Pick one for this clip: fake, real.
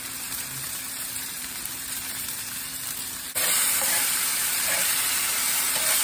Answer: fake